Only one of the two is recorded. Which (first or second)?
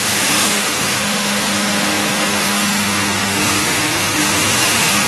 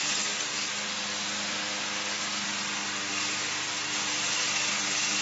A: second